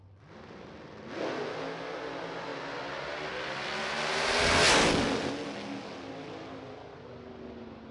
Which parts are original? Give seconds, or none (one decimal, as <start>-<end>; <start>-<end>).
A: 0.0-7.9